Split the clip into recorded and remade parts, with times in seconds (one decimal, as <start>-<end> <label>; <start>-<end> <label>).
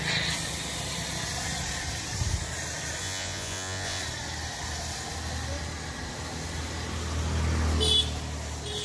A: 0.0-3.0 recorded; 3.0-4.0 remade; 4.0-8.8 recorded